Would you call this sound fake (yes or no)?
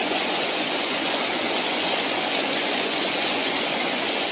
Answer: yes